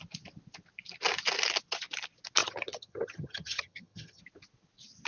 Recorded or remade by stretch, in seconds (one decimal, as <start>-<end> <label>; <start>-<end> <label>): 0.0-2.4 recorded; 2.4-4.2 remade; 4.2-5.1 recorded